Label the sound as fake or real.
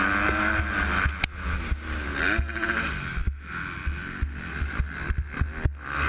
real